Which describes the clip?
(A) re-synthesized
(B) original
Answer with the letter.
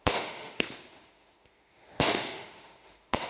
A